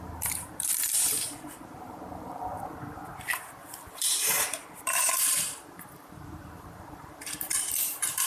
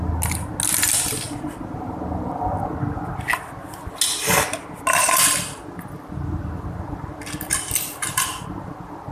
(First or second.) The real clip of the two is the second